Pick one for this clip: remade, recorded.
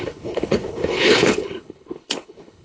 remade